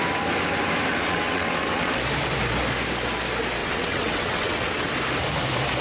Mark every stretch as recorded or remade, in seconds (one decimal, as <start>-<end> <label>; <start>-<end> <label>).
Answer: 0.0-0.9 recorded; 0.9-1.9 remade; 1.9-3.6 recorded; 3.6-4.9 remade; 4.9-5.8 recorded